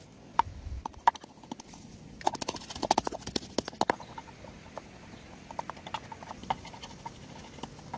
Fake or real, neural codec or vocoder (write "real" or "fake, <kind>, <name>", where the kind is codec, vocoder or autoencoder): real